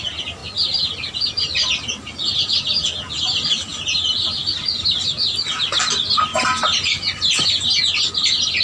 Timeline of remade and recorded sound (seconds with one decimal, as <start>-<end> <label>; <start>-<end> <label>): 0.0-8.6 recorded